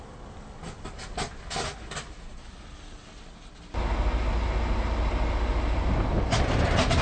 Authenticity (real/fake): real